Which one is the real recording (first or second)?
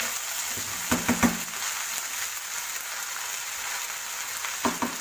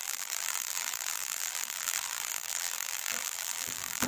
first